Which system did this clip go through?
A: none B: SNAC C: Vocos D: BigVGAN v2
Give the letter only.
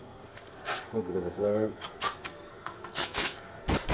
B